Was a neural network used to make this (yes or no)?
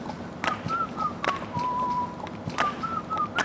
no